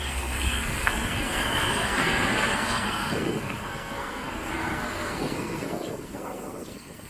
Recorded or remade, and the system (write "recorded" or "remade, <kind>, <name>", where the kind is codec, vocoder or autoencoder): remade, codec, SNAC